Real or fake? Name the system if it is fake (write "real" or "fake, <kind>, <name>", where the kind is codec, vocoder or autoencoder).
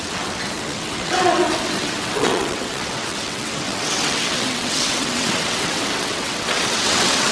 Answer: fake, vocoder, WaveNeXt